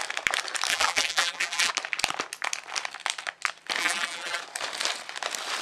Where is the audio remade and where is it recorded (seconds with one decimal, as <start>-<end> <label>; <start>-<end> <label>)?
0.0-0.7 recorded; 0.7-1.7 remade; 1.7-3.8 recorded; 3.8-4.4 remade; 4.4-5.6 recorded